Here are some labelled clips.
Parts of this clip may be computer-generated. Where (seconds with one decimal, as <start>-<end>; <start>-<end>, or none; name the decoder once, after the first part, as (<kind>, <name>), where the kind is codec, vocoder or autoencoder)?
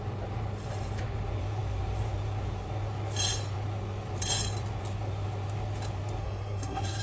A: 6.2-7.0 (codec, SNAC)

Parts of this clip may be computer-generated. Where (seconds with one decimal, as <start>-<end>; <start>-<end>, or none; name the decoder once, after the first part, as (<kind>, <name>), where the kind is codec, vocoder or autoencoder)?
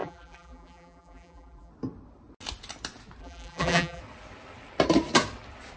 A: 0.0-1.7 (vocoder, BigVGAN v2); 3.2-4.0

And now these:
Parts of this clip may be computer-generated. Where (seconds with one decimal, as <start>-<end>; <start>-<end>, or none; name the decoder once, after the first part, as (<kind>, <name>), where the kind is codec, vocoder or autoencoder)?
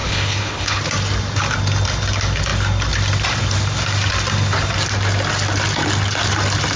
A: 0.0-0.8 (codec, HILCodec)